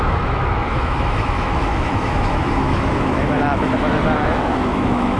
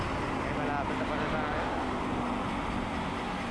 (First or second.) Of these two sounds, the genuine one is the second